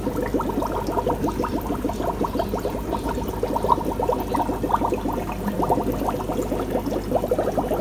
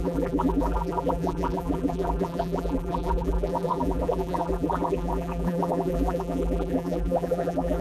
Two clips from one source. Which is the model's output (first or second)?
second